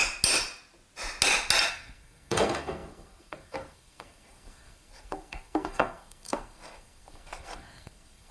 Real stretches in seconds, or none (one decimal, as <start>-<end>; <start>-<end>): 0.0-1.7